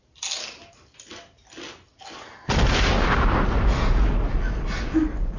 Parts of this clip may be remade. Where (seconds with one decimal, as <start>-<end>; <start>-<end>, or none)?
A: none